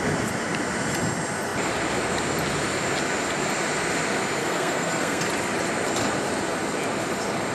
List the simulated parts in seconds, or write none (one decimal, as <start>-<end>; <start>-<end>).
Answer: 4.4-5.2